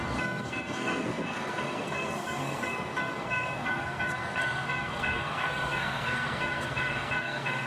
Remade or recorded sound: remade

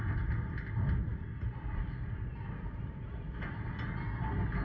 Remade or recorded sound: recorded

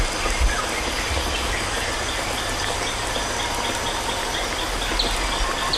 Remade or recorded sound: recorded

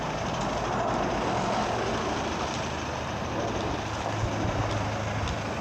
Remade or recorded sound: recorded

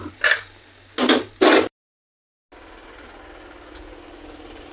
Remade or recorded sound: recorded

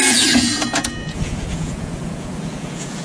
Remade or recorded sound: remade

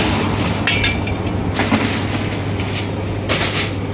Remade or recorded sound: recorded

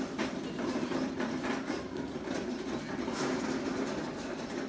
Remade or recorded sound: remade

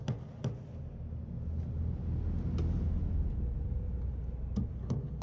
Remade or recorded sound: recorded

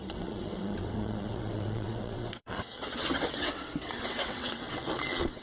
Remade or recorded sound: remade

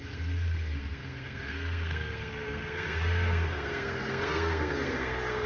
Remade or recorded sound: remade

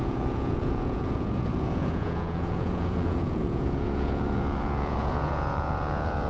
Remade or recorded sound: remade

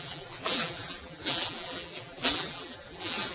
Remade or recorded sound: remade